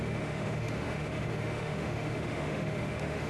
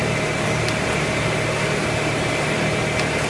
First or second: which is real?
second